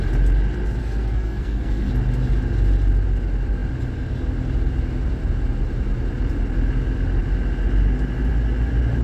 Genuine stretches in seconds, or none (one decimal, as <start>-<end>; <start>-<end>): 0.0-0.8; 1.9-9.0